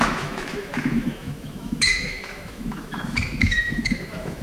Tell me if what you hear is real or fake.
fake